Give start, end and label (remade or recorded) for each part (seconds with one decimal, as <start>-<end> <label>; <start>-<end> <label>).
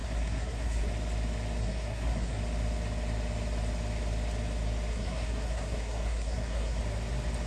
0.0-0.9 remade; 0.9-1.6 recorded; 1.6-2.4 remade; 2.4-4.9 recorded; 4.9-6.8 remade; 6.8-7.5 recorded